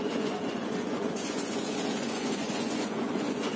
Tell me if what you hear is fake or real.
fake